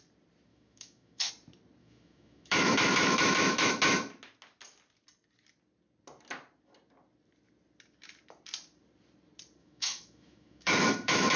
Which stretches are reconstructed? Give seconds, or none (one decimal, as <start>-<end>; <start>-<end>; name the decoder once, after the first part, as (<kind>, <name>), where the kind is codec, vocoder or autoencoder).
0.5-1.3 (autoencoder, DAC-VAE); 1.8-3.7; 9.6-11.4